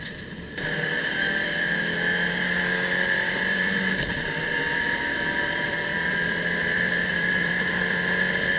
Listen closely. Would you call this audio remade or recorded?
remade